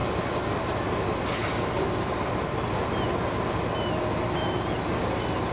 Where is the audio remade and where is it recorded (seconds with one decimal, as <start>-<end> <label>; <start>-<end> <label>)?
0.0-0.6 remade; 0.6-1.4 recorded; 1.4-4.7 remade; 4.7-5.5 recorded